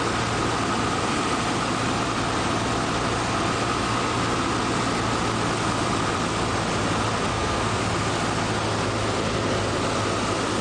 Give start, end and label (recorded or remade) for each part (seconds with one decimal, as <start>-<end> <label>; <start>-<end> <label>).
0.0-7.3 recorded; 7.3-7.8 remade; 7.8-10.6 recorded